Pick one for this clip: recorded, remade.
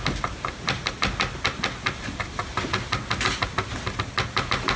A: recorded